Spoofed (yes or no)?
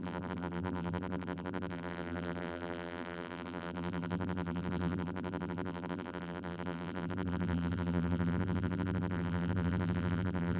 yes